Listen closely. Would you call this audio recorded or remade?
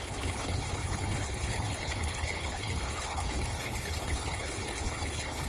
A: remade